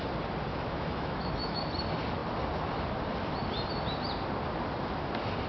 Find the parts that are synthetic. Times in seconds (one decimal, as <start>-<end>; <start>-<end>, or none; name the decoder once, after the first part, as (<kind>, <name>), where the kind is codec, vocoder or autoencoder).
0.5-1.6 (autoencoder, DAC-VAE)